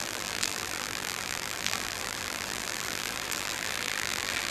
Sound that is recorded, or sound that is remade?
remade